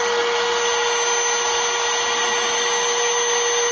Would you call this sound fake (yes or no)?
no